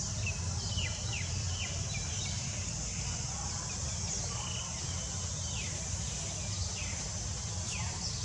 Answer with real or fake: real